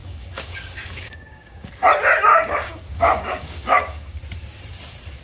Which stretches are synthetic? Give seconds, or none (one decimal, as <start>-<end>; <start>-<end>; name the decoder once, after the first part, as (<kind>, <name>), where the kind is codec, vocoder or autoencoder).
0.0-1.7 (codec, DAC); 2.3-4.2